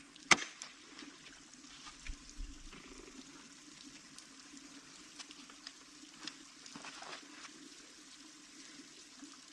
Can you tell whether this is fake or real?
real